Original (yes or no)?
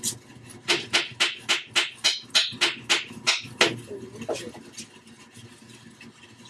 yes